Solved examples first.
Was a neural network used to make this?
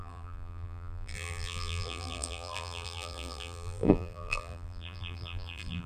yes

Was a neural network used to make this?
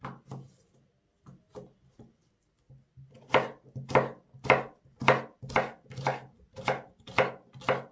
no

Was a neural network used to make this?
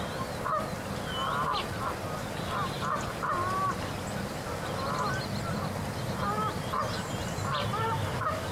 no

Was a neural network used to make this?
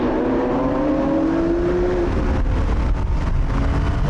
no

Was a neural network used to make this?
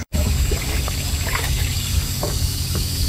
yes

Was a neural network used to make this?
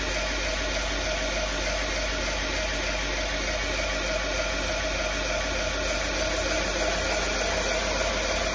no